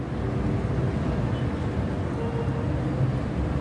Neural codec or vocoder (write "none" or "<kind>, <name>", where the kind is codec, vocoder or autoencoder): none